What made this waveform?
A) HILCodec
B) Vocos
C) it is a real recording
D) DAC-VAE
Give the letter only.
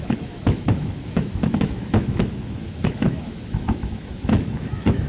D